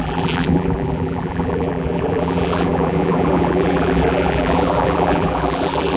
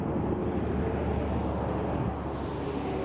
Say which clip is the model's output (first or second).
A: first